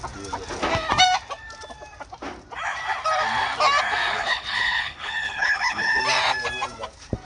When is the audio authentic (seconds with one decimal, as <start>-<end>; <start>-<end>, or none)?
0.0-4.1; 6.0-7.2